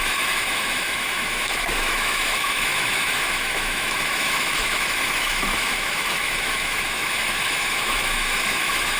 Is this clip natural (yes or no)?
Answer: no